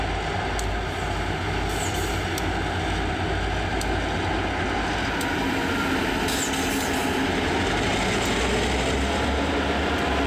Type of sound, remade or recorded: recorded